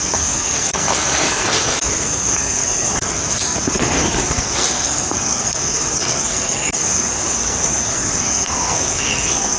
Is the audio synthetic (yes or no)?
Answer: yes